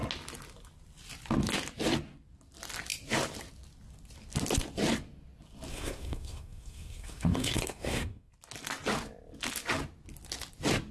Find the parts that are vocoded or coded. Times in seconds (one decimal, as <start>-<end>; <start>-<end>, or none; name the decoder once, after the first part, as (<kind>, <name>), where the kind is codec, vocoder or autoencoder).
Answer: 5.7-8.3 (codec, SNAC)